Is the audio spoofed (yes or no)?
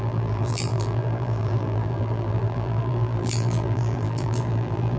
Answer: yes